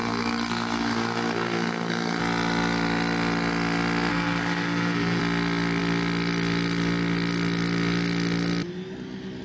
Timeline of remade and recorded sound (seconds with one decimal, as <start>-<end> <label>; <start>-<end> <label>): 0.0-2.2 remade; 2.2-4.1 recorded; 4.1-5.2 remade; 5.2-9.4 recorded